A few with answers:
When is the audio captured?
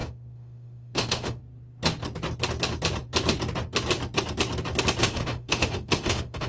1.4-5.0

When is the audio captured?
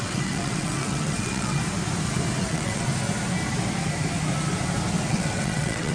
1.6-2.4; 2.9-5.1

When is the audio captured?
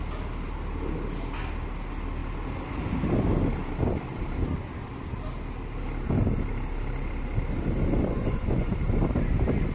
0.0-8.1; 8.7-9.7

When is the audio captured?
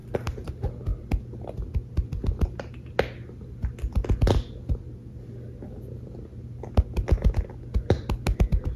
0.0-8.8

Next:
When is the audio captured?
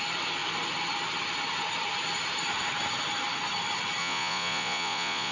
0.0-4.0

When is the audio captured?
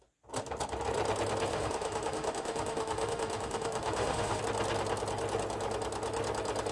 0.0-1.5; 4.4-6.7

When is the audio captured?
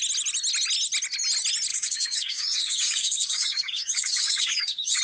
0.0-1.7